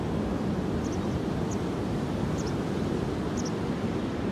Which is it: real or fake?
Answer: real